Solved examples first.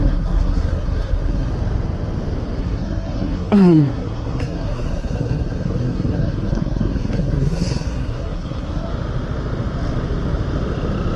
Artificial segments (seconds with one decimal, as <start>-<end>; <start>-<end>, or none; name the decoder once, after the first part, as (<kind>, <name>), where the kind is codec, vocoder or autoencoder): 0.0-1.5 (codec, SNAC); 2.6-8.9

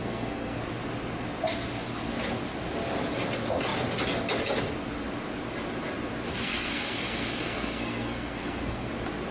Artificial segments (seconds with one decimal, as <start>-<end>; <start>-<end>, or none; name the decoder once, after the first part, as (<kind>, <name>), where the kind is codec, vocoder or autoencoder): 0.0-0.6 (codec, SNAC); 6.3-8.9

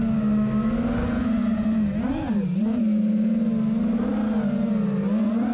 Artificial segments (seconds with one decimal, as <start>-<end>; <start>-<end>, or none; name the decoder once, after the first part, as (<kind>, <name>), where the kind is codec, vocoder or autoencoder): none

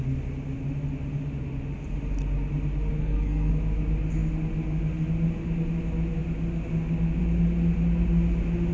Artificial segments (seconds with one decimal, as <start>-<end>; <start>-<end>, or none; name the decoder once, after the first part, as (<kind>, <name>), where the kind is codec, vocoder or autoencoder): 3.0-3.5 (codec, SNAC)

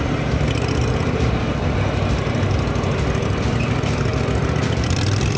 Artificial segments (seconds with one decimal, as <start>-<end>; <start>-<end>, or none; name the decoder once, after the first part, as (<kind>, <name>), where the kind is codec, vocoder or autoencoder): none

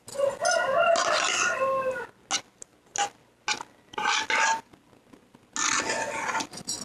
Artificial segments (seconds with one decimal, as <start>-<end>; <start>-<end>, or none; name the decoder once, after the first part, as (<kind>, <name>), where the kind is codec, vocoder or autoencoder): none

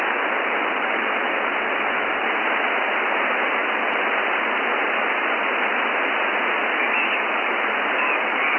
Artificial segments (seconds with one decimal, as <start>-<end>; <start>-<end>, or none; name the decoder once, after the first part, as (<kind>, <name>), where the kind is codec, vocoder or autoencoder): none